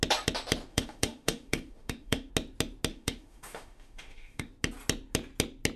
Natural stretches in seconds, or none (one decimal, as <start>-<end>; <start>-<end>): 0.0-0.7; 2.3-2.9; 4.5-5.8